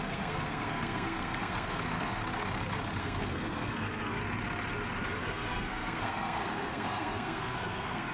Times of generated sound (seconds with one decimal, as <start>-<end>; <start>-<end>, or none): 0.0-2.2; 3.0-4.2; 5.2-8.1